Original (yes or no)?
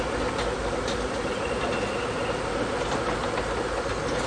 yes